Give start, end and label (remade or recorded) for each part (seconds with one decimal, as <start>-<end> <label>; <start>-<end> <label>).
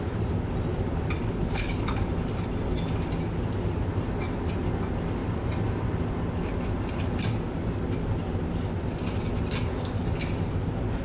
0.0-0.7 recorded; 0.7-1.4 remade; 1.4-5.2 recorded; 5.2-6.1 remade; 6.1-11.0 recorded